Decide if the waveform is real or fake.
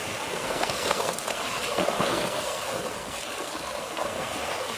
fake